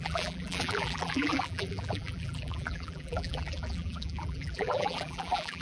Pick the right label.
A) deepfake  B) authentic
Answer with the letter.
A